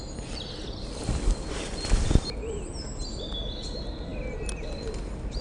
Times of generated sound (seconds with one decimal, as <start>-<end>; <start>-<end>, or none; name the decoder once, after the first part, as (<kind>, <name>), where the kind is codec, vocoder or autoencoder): 1.1-2.7 (vocoder, BigVGAN v2)